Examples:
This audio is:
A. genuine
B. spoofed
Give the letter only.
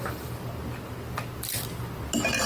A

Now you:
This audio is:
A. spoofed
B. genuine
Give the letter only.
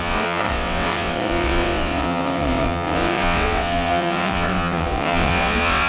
A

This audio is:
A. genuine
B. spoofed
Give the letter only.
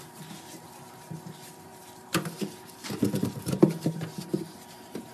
B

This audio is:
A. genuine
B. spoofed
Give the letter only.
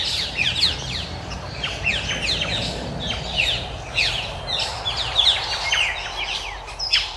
A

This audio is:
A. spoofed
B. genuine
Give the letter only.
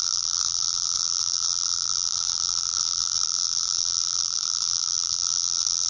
A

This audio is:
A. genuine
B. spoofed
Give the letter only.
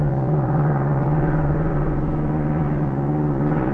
B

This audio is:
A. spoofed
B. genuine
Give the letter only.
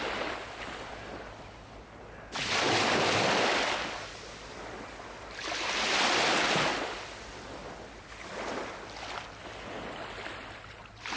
B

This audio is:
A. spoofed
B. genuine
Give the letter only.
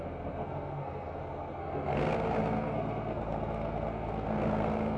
A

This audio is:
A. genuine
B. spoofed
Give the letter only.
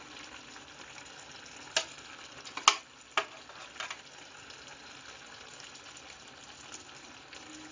A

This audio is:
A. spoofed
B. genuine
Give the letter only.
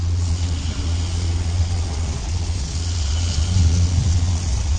A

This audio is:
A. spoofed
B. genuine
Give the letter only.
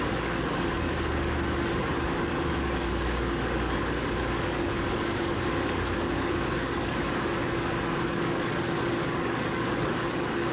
A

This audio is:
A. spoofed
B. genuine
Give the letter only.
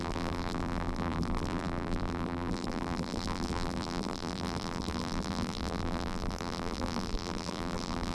A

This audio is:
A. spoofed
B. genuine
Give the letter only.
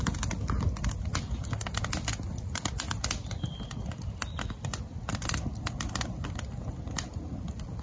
B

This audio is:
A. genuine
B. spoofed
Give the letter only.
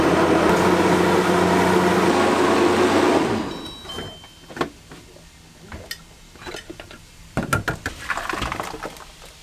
A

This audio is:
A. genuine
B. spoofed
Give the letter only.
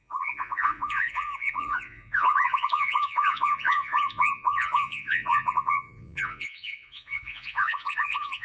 B